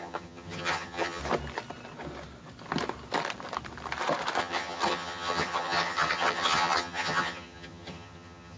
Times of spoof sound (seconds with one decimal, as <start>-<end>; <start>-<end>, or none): 0.0-1.2; 4.4-8.6